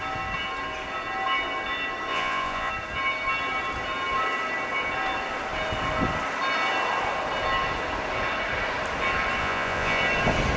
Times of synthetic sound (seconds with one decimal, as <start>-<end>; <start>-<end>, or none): 2.1-2.7; 9.4-10.0